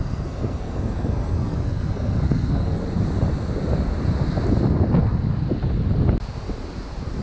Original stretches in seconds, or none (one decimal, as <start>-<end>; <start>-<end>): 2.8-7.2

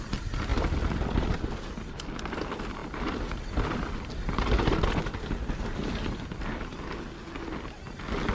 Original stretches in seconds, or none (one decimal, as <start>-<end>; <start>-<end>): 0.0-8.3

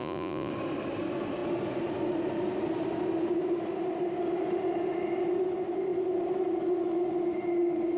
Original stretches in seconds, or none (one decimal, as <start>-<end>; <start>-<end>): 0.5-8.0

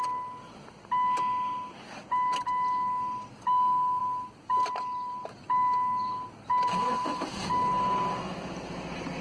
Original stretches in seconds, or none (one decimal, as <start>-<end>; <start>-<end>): 0.0-4.0; 7.7-9.2

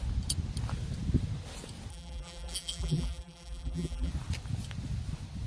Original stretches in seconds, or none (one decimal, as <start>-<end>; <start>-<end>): 0.0-1.9; 4.1-5.5

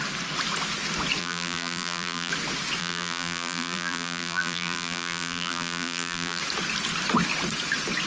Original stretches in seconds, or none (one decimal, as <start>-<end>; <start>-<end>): 0.0-1.2; 2.3-2.8; 6.4-8.1